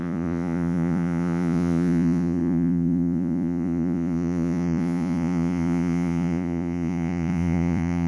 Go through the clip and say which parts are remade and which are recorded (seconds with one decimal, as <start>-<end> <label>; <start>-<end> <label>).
0.0-8.1 remade